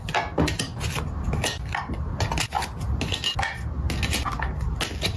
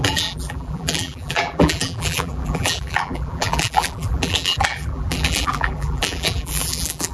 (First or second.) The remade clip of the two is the second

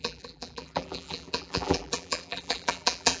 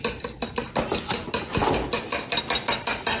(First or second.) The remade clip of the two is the first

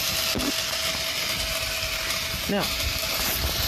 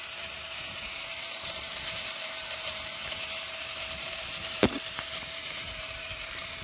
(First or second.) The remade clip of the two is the second